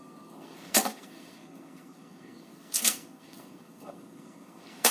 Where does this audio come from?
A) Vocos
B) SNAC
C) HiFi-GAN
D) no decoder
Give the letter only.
B